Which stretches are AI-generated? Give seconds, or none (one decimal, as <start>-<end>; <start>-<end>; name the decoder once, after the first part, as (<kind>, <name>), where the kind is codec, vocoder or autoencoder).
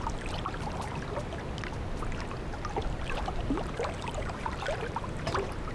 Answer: 2.8-5.7 (vocoder, BigVGAN v2)